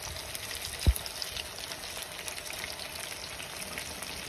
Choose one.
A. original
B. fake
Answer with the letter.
A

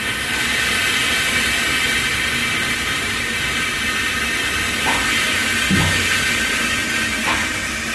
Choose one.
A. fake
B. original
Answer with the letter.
B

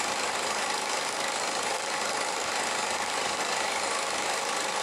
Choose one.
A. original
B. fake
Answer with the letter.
B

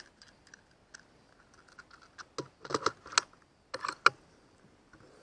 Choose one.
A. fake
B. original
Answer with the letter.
B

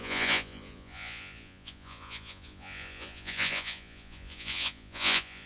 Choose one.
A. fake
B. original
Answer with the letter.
A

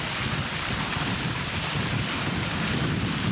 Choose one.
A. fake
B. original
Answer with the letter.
B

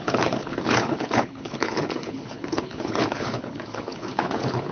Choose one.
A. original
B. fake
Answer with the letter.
B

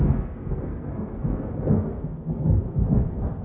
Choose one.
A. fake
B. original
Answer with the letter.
A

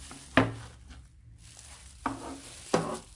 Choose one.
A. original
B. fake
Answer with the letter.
A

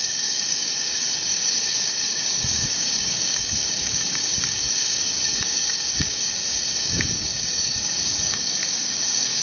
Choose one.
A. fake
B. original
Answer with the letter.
A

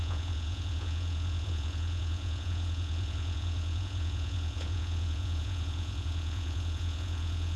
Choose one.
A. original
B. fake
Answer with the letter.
B